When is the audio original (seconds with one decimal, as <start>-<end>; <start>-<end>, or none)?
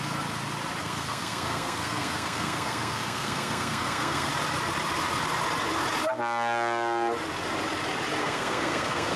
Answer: 0.0-0.8; 4.3-8.2